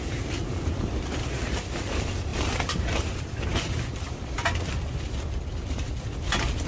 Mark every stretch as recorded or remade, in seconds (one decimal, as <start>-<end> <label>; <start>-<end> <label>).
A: 0.0-6.7 recorded